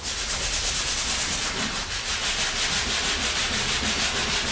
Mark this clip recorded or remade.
recorded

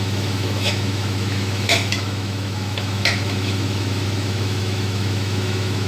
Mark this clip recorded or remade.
remade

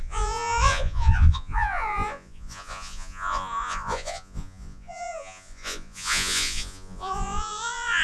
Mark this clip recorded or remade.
remade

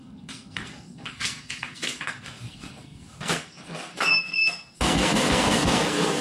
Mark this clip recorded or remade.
remade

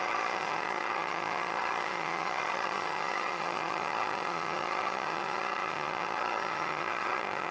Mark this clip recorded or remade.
remade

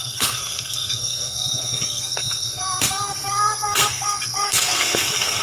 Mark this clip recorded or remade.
remade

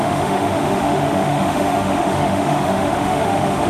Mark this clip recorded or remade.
remade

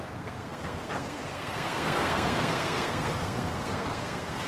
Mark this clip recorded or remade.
remade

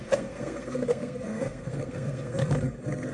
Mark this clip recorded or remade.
remade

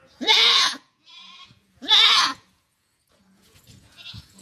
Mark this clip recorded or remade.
remade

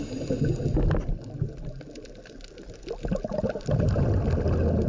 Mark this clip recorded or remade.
recorded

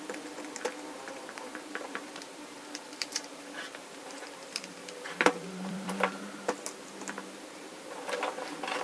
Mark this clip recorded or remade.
remade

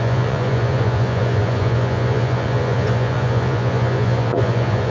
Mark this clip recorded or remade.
remade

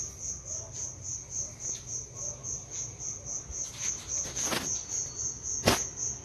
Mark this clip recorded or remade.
recorded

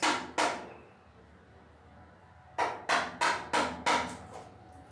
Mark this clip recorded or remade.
recorded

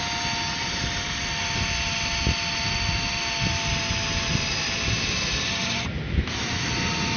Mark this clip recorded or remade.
recorded